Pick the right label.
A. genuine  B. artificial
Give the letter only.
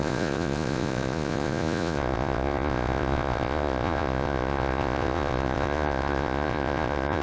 B